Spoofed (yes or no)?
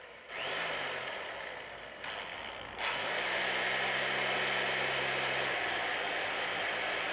no